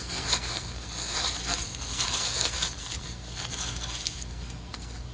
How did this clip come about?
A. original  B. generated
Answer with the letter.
B